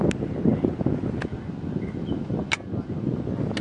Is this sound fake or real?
real